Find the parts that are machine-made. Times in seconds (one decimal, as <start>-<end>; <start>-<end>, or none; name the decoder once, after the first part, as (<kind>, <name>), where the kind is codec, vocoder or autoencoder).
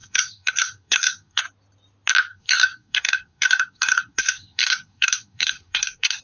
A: 0.0-1.4 (codec, SNAC); 2.3-6.2